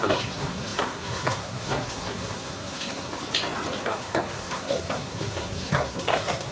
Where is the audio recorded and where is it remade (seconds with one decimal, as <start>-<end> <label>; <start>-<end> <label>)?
0.0-3.1 remade; 3.1-3.8 recorded; 3.8-6.5 remade